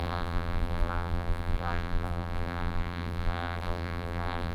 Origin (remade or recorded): remade